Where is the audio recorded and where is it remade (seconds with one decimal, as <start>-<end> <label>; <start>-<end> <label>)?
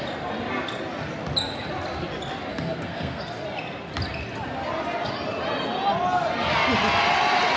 0.0-2.5 recorded; 2.5-3.2 remade; 3.2-7.6 recorded